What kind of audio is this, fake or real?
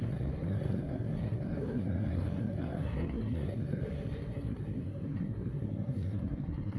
fake